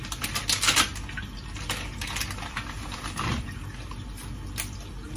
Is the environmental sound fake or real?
real